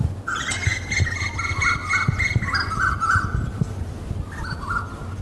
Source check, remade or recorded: recorded